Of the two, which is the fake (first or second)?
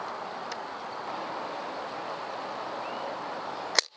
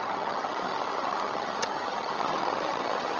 second